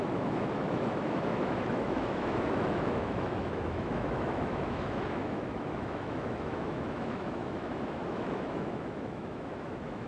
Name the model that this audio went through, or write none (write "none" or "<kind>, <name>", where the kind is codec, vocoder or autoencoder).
autoencoder, DAC-VAE